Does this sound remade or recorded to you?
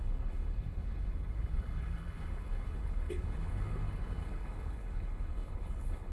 remade